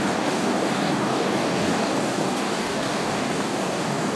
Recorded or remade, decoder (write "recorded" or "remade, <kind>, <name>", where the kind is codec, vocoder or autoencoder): remade, codec, DAC